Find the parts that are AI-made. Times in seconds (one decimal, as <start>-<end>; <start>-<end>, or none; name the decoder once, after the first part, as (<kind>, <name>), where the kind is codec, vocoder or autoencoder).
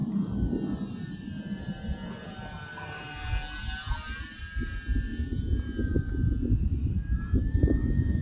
6.8-8.2 (autoencoder, DAC-VAE)